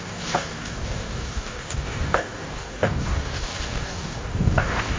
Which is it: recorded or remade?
remade